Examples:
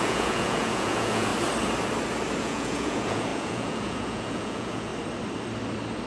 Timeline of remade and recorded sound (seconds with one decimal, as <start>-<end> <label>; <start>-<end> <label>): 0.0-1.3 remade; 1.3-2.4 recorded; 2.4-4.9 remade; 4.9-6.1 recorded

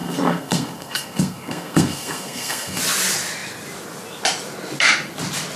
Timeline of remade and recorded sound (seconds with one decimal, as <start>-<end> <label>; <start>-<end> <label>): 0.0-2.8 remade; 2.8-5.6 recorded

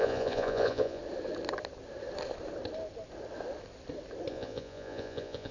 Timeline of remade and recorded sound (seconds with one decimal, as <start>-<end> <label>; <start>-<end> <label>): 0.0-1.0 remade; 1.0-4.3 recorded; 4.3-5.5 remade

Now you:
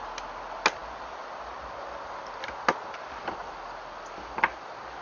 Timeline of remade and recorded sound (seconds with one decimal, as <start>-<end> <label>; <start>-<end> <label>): 0.0-5.0 recorded

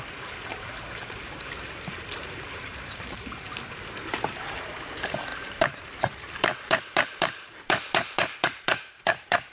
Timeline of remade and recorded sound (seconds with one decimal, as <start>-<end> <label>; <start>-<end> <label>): 0.0-9.5 remade

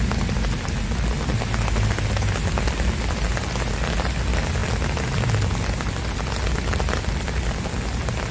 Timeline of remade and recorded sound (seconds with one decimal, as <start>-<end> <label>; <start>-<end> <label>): 0.0-8.3 recorded